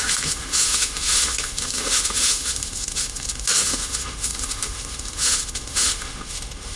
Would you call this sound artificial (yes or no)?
yes